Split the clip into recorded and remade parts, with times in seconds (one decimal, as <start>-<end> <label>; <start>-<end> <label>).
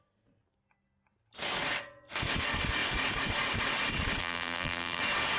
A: 0.0-4.2 recorded; 4.2-5.0 remade; 5.0-5.4 recorded